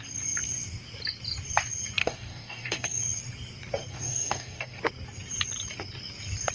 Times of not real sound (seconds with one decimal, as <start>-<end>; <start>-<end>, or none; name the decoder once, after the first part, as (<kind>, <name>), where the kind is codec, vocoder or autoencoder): 2.0-3.0 (codec, DAC); 3.9-4.8